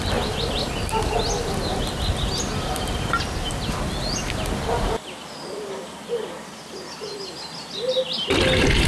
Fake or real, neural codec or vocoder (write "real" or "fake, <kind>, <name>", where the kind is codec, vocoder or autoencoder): real